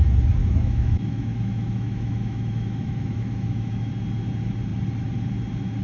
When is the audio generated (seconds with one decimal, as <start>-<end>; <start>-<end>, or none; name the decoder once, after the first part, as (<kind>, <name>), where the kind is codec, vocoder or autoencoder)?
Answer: 0.4-3.9 (autoencoder, DAC-VAE)